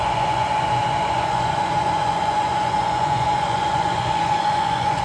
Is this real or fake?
fake